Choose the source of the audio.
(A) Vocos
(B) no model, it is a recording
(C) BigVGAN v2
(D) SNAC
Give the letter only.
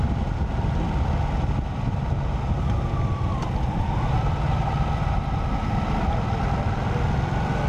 B